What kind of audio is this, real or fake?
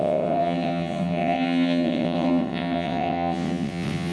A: fake